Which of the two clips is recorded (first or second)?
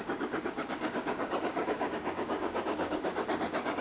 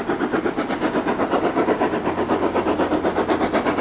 second